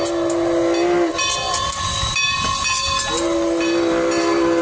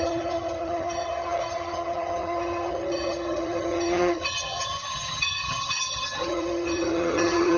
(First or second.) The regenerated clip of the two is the second